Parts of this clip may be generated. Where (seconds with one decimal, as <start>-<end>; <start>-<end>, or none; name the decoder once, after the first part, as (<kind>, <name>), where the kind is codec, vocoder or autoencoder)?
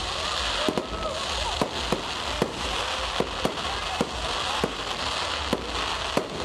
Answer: none